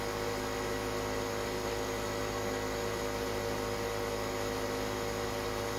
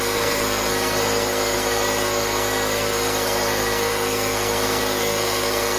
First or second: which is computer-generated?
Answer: second